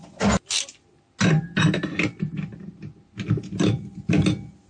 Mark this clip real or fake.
real